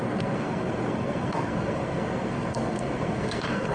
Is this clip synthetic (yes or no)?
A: yes